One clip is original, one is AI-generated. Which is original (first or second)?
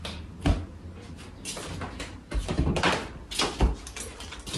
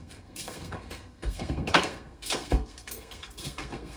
first